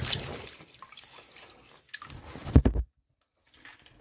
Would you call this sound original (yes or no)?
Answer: yes